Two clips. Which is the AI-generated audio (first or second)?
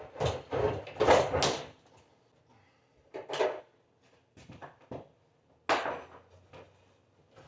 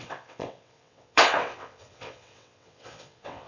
second